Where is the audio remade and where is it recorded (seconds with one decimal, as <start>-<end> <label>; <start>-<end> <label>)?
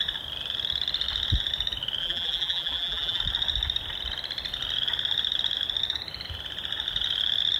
0.0-2.0 recorded; 2.0-3.2 remade; 3.2-7.6 recorded